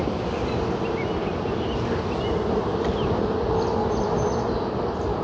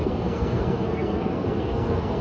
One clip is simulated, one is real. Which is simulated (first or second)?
second